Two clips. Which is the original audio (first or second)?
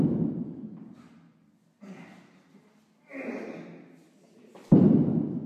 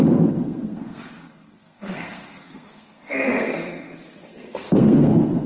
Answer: first